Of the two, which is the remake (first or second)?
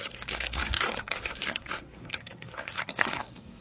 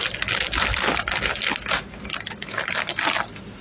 first